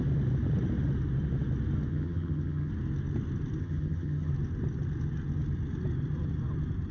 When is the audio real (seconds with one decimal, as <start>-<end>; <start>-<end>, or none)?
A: 0.0-1.9; 2.7-3.6; 4.3-6.9

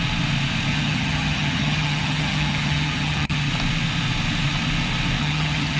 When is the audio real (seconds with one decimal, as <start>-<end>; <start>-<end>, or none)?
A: 0.0-0.7; 3.5-5.2

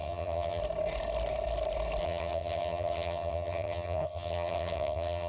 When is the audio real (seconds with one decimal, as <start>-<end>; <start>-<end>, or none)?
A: 0.6-2.0

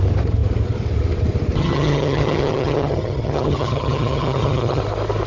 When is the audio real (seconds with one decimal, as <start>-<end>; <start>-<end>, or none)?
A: 0.0-1.6; 4.8-5.3

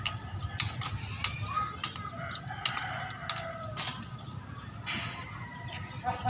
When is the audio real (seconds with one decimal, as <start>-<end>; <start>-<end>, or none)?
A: 0.0-6.3

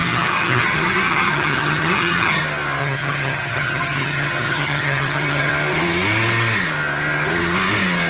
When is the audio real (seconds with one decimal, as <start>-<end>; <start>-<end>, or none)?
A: 2.4-2.8; 5.5-8.1